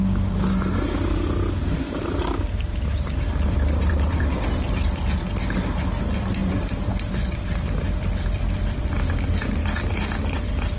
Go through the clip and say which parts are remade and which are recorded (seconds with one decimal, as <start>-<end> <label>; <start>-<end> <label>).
0.0-2.7 recorded; 2.7-5.2 remade; 5.2-6.4 recorded; 6.4-8.9 remade; 8.9-10.8 recorded